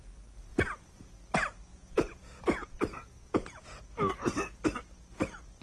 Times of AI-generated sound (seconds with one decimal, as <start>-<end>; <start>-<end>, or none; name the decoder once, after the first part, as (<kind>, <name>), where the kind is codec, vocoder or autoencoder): 0.5-1.1 (vocoder, Vocos); 1.7-3.8